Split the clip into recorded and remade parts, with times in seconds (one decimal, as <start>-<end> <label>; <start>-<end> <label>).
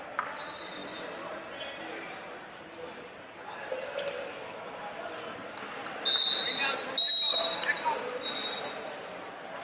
0.0-4.3 recorded; 4.3-5.0 remade; 5.0-9.6 recorded